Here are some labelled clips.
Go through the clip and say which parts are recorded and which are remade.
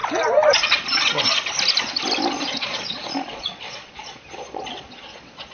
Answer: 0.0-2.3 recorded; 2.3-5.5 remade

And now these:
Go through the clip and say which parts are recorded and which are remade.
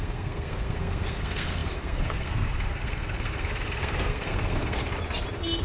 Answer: 0.0-4.8 remade; 4.8-5.6 recorded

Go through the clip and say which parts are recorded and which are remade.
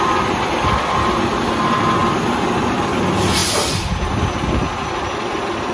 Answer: 0.0-5.7 recorded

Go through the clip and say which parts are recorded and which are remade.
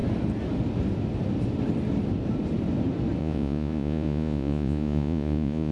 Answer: 0.0-3.2 recorded; 3.2-5.7 remade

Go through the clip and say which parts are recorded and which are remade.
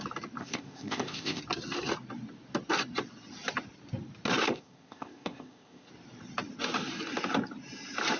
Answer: 0.0-0.4 recorded; 0.4-1.4 remade; 1.4-4.5 recorded; 4.5-5.9 remade; 5.9-8.2 recorded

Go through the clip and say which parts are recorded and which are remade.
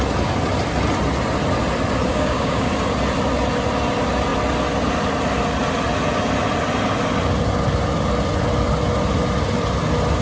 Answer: 0.0-2.1 recorded; 2.1-2.7 remade; 2.7-10.2 recorded